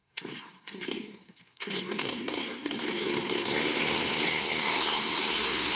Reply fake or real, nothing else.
fake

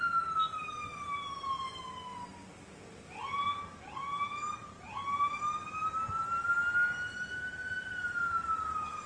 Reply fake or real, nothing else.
real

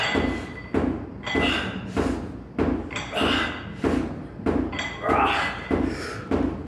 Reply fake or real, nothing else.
real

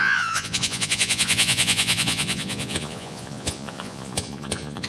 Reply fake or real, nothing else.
fake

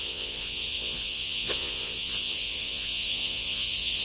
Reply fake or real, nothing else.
fake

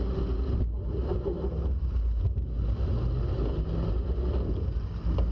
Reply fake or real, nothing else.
real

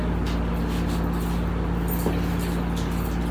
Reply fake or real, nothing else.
real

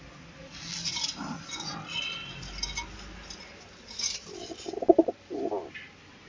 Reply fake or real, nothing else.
real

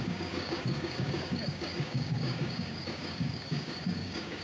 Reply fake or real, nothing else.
fake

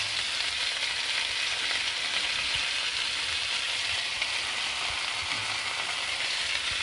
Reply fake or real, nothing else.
fake